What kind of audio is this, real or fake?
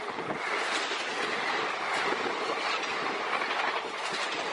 real